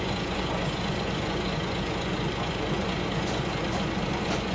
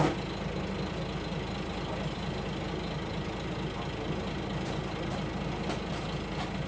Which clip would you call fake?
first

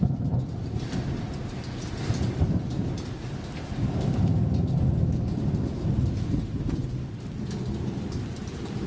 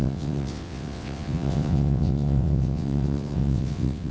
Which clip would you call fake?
second